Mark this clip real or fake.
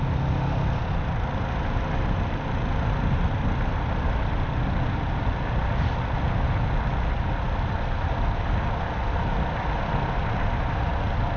real